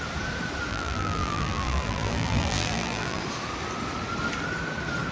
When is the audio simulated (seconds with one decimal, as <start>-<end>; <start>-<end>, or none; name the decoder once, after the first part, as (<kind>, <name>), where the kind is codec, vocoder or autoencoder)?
0.7-3.2 (vocoder, BigVGAN v2)